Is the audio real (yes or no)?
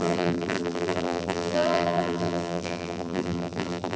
no